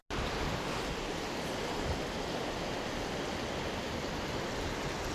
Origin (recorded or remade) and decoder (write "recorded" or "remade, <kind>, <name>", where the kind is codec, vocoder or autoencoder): recorded